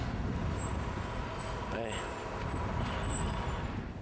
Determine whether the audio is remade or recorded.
recorded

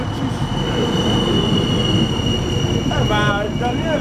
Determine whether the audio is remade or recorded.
recorded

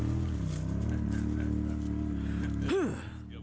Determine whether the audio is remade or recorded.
recorded